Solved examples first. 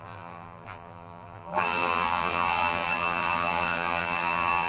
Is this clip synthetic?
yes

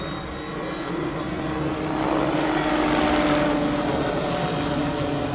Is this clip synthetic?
no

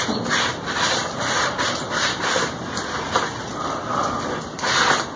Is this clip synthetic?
yes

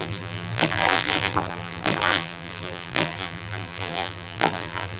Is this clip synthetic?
yes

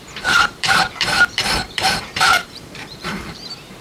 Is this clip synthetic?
yes